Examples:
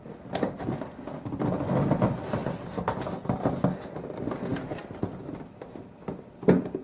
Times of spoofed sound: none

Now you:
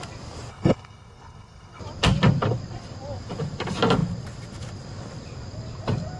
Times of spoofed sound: 0.5-1.8 (codec, HILCodec)

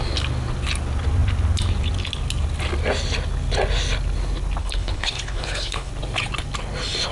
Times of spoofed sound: 4.6-5.9 (codec, HILCodec)

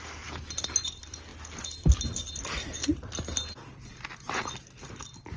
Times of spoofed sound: none

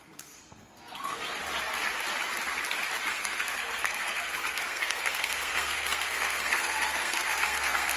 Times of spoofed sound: 0.0-1.4 (codec, SNAC); 3.0-8.0

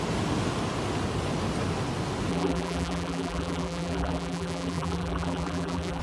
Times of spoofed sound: 2.3-6.0 (vocoder, BigVGAN v2)